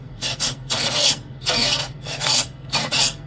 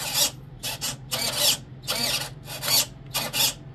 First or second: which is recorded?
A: second